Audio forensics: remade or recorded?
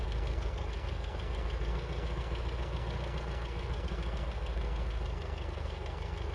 remade